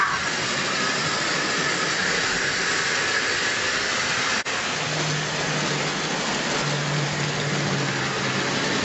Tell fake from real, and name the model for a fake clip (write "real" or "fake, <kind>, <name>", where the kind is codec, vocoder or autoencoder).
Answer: real